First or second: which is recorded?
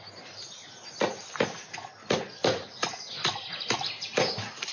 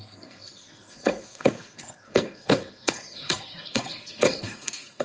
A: first